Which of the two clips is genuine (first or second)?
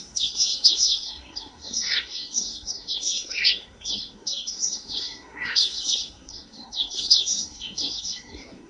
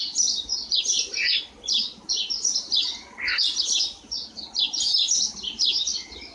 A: second